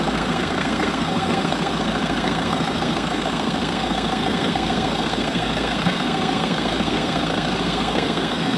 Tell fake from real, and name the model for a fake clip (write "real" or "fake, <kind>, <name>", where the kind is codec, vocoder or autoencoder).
fake, codec, SNAC